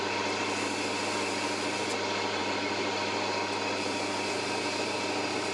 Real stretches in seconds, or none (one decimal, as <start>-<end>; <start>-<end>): 0.0-5.5